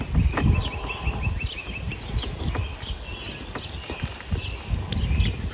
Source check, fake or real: real